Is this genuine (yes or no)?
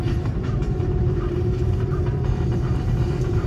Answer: no